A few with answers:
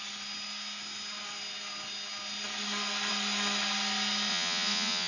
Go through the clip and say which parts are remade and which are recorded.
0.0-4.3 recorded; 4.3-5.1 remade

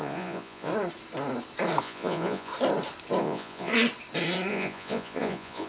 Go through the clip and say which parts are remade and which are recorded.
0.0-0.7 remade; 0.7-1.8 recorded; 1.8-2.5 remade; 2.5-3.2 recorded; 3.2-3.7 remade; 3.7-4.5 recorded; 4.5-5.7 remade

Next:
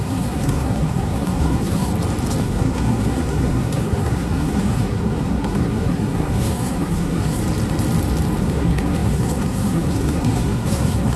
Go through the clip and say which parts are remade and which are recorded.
0.0-1.9 remade; 1.9-2.4 recorded; 2.4-7.4 remade; 7.4-8.4 recorded; 8.4-11.2 remade

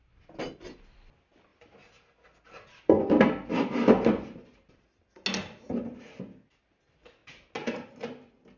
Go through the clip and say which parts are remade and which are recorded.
0.0-8.6 recorded

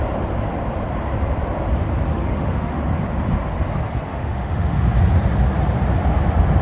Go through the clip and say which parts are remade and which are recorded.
0.0-2.1 recorded; 2.1-2.8 remade; 2.8-4.1 recorded; 4.1-4.9 remade; 4.9-6.6 recorded

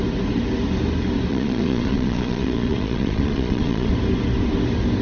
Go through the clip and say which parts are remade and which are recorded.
0.0-1.3 recorded; 1.3-3.9 remade; 3.9-5.0 recorded

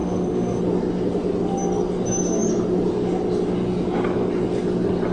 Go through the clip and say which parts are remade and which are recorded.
0.0-0.6 remade; 0.6-5.1 recorded

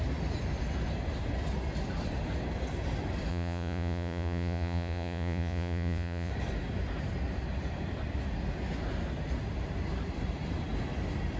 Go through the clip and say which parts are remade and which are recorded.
0.0-3.3 recorded; 3.3-6.3 remade; 6.3-11.4 recorded